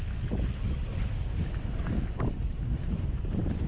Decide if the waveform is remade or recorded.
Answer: recorded